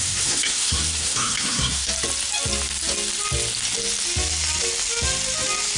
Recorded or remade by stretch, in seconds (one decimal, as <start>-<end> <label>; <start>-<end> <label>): 0.0-1.9 remade; 1.9-5.8 recorded